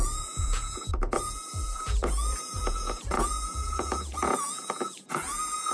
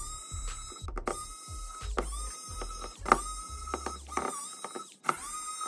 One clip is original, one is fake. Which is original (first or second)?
second